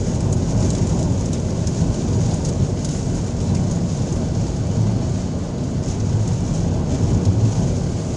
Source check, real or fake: real